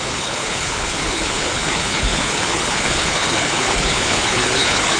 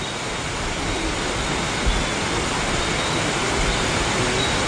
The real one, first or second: second